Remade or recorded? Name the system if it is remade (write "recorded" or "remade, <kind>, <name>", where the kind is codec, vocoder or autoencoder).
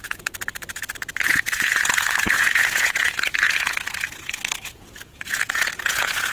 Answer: remade, vocoder, Vocos